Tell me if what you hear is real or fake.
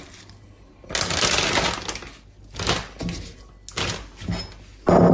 real